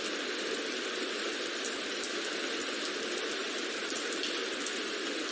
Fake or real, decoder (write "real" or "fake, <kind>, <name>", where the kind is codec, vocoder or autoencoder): real